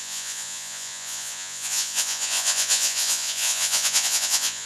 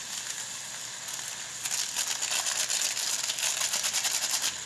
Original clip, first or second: second